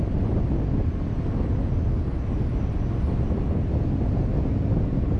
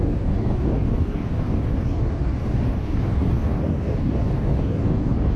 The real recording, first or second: first